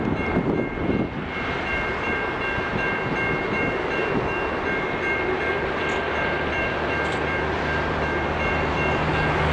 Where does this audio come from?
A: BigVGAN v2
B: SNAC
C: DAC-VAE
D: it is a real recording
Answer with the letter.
A